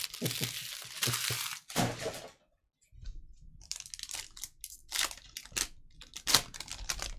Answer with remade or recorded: recorded